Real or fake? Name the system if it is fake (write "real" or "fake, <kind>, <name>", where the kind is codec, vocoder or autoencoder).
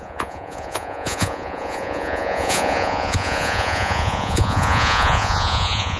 fake, vocoder, Vocos